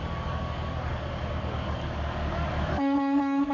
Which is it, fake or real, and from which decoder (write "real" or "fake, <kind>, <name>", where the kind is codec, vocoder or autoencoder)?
fake, codec, DAC